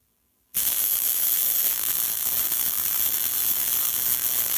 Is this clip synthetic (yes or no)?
yes